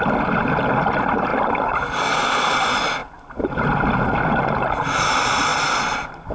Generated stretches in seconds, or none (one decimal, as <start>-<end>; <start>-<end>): none